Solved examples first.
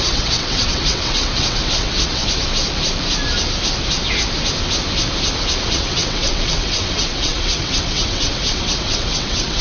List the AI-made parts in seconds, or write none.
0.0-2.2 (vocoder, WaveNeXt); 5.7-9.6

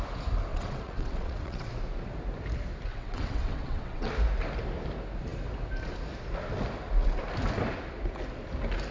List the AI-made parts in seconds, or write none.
0.5-1.7 (vocoder, WaveNeXt); 2.9-4.1

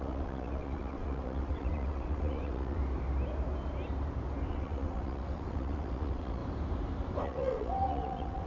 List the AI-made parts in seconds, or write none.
0.0-2.8 (vocoder, WaveNeXt); 4.5-6.4; 7.2-8.5

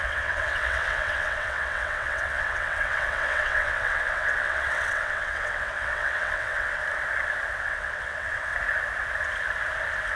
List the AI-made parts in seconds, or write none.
0.0-6.8 (vocoder, WaveNeXt); 7.6-8.5

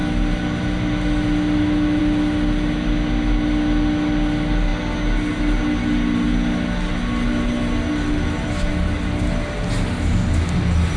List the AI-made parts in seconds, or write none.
none

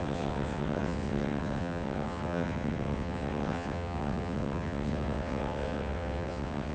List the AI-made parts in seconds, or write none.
0.0-6.7 (vocoder, WaveNeXt)